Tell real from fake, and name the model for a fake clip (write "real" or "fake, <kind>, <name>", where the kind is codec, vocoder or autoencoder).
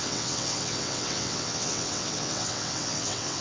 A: fake, vocoder, WaveNeXt